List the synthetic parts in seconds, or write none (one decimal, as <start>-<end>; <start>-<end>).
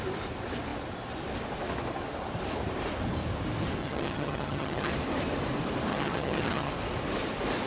3.8-4.9; 5.9-6.7